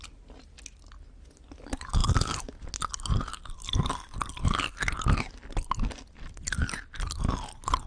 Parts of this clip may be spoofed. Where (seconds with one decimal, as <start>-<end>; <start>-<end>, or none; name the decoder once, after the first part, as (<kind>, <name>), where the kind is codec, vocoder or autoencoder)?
none